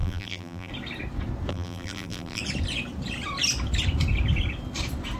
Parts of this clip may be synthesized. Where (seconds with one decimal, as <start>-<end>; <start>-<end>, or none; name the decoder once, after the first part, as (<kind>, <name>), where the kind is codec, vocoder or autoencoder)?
0.0-0.7 (vocoder, BigVGAN v2); 1.5-2.4